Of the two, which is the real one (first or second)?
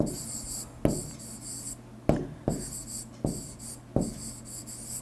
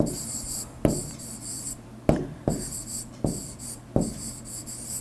first